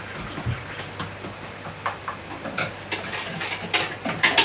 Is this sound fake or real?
real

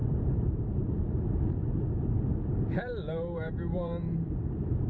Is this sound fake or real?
fake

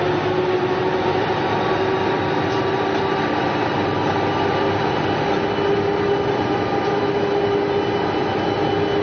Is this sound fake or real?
real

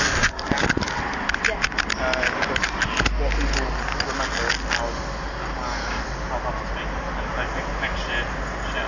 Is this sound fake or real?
real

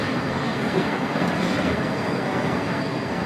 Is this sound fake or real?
fake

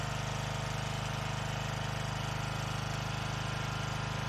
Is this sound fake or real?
real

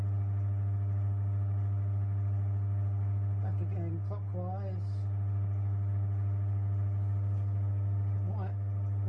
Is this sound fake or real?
real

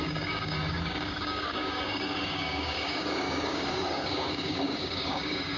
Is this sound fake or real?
fake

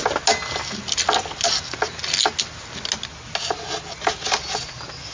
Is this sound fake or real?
real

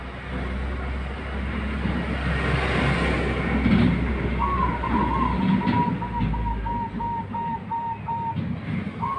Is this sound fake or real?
real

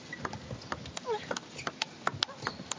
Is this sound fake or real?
real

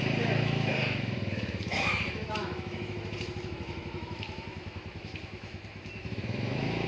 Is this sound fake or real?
fake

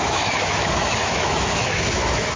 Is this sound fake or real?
fake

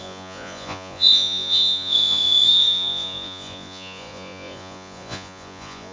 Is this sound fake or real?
fake